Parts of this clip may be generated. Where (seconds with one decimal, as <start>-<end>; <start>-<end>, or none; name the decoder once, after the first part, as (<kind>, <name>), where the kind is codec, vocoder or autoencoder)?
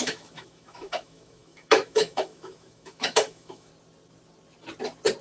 0.0-3.7 (autoencoder, DAC-VAE)